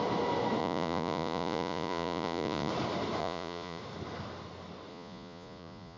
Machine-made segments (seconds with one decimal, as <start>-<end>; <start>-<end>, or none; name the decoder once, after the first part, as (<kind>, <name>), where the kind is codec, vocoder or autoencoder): 0.6-2.7 (vocoder, Vocos); 3.2-3.8; 4.9-6.0